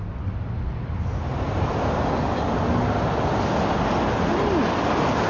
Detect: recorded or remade recorded